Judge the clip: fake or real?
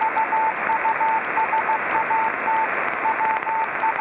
real